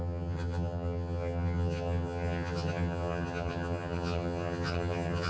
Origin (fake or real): fake